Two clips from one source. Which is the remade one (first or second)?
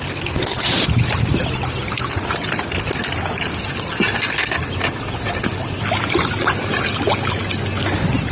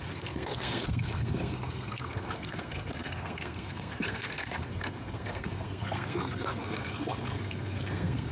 second